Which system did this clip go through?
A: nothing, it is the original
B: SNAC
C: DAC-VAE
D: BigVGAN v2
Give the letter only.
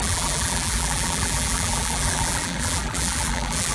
D